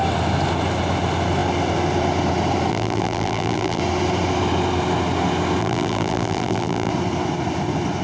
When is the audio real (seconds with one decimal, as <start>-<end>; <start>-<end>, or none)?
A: 0.0-2.7; 3.8-5.6; 6.9-8.0

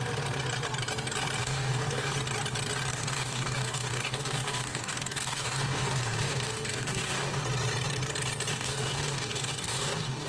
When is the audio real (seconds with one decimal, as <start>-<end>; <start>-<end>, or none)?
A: 0.0-1.4; 2.1-2.9; 7.4-8.5